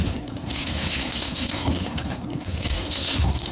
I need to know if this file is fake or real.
fake